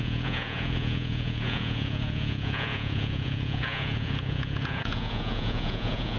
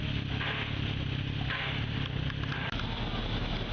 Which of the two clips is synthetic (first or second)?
first